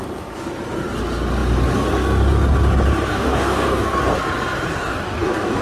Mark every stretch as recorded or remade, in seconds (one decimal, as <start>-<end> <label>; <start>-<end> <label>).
0.0-3.1 recorded; 3.1-4.0 remade; 4.0-4.7 recorded; 4.7-5.6 remade